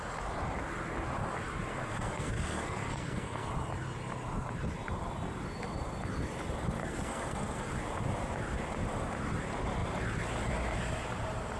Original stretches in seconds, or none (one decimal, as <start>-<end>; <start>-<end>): 0.0-1.7; 3.5-6.8; 7.7-11.6